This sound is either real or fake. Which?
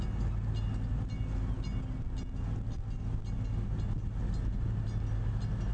real